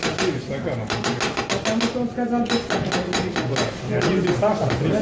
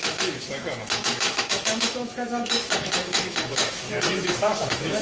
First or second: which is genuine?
first